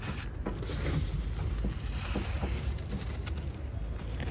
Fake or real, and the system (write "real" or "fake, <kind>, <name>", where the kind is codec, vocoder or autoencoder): real